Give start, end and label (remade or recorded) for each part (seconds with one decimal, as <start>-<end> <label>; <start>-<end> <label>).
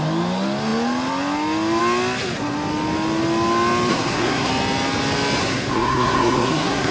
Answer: 0.0-3.9 recorded; 3.9-4.5 remade; 4.5-5.4 recorded; 5.4-6.9 remade